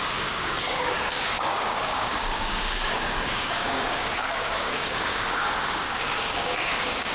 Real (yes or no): no